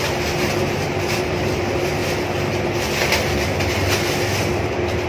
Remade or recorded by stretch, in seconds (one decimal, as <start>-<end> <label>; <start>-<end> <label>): 0.0-2.0 remade; 2.0-5.1 recorded